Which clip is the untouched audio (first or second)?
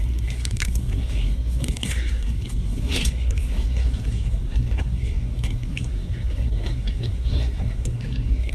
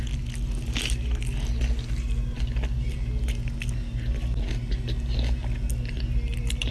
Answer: second